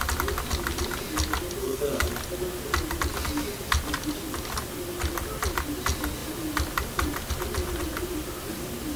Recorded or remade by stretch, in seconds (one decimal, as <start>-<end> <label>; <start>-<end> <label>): 0.0-1.6 recorded; 1.6-2.1 remade; 2.1-9.0 recorded